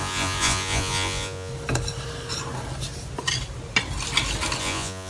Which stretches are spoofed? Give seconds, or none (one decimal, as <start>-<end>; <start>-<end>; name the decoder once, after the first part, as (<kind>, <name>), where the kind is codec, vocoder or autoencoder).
0.0-1.5 (vocoder, Vocos); 4.6-5.1